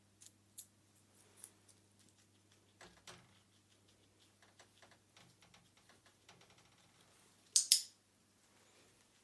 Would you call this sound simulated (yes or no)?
no